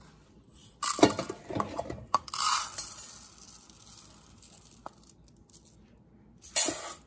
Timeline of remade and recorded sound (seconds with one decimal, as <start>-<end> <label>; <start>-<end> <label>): 0.0-7.1 recorded